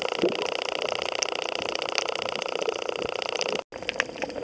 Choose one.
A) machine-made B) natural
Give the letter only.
B